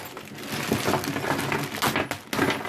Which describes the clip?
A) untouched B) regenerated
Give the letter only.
A